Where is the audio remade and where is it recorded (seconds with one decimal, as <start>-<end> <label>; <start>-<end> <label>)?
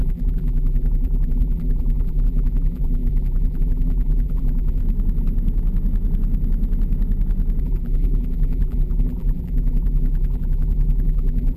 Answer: 0.0-4.8 remade; 4.8-7.6 recorded; 7.6-11.6 remade